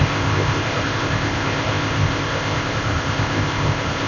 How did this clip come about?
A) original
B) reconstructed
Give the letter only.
B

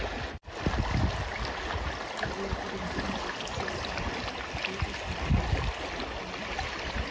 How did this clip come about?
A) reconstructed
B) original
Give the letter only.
B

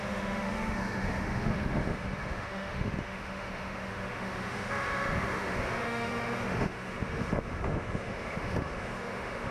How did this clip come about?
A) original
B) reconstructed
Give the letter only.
B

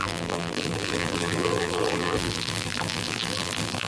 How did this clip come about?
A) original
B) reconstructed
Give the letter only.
B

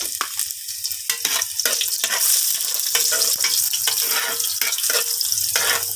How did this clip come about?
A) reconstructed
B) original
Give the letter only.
B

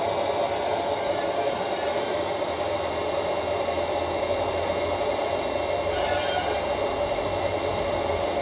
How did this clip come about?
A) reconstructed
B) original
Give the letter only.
B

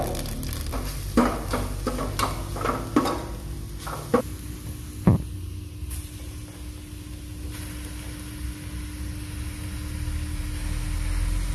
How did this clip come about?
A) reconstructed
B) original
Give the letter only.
B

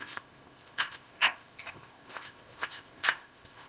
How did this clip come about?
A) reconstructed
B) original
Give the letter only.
A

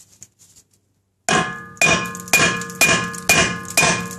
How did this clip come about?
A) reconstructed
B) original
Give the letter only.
B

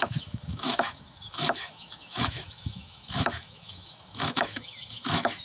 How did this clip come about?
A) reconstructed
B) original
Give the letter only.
A